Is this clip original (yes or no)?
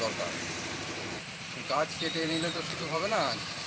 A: no